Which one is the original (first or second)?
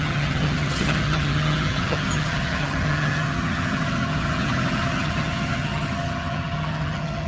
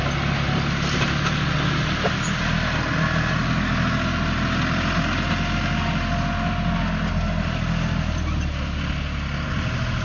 second